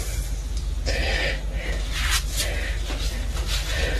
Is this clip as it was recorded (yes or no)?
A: yes